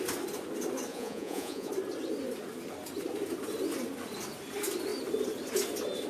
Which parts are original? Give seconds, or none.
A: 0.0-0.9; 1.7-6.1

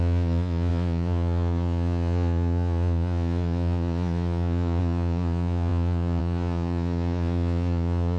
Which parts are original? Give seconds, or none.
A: none

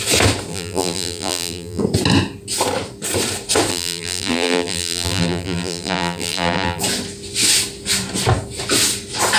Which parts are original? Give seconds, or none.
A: 0.0-0.5; 1.8-3.7; 6.8-9.4

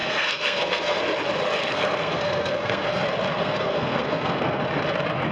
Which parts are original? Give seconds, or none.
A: 1.0-1.6; 3.0-3.4; 4.6-5.3

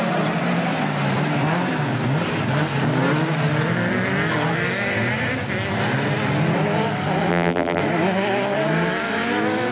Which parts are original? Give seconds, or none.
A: 0.0-7.3; 7.8-9.7

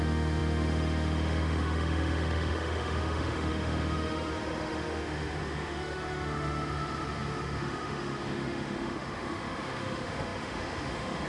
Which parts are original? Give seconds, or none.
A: none

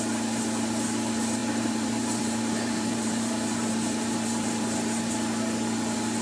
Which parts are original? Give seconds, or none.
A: 0.0-1.4; 5.1-6.2